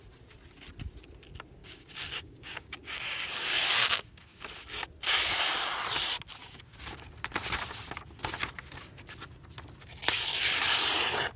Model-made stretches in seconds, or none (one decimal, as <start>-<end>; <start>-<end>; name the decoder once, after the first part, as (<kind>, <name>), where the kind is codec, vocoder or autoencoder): 1.6-4.4 (codec, DAC); 6.4-7.0